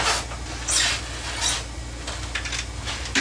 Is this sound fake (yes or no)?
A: no